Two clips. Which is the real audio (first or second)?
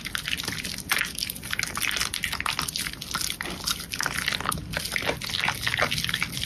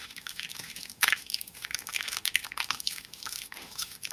first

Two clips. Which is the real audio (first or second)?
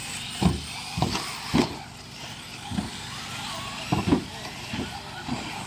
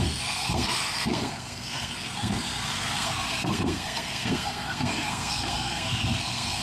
first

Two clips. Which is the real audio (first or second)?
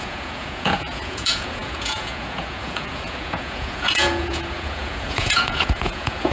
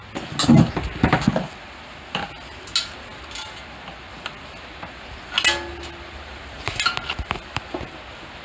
second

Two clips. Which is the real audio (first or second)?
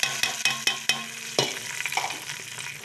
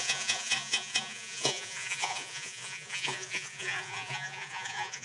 first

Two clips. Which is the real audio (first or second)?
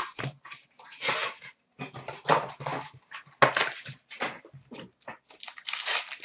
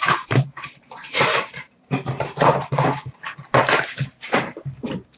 first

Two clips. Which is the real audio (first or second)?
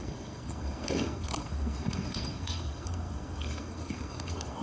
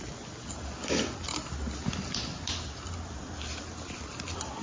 second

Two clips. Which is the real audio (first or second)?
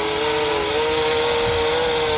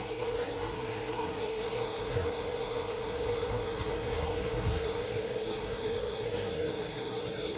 first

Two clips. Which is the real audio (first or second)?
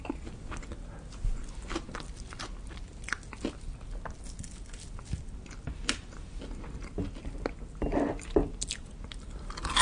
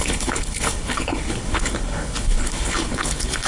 first